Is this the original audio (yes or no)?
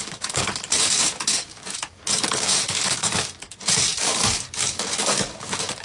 no